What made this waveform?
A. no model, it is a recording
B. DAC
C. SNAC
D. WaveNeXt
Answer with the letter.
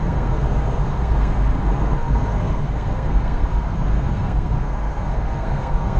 C